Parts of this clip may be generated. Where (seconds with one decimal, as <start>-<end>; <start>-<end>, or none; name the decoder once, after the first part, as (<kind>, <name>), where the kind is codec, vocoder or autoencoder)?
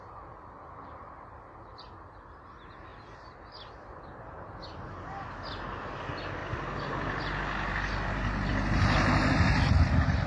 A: none